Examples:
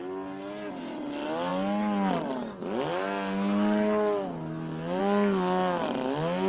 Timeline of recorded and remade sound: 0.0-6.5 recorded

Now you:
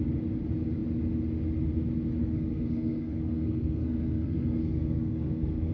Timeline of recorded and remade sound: 0.0-2.2 recorded; 2.2-5.7 remade

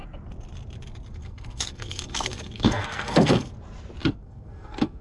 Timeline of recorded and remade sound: 0.0-1.2 recorded; 1.2-3.5 remade; 3.5-4.0 recorded; 4.0-5.0 remade

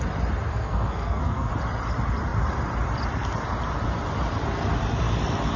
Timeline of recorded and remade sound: 0.0-0.5 recorded; 0.5-1.5 remade; 1.5-5.6 recorded